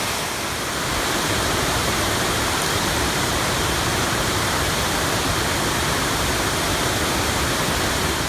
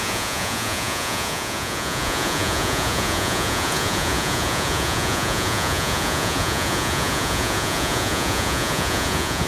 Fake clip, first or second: second